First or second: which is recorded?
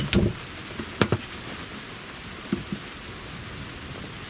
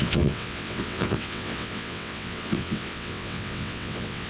first